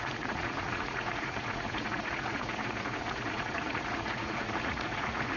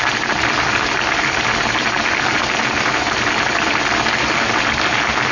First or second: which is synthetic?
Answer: first